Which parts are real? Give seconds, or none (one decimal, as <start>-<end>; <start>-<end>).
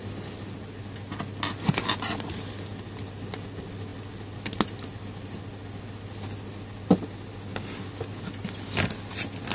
0.0-9.5